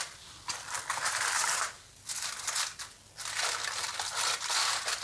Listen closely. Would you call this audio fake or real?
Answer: real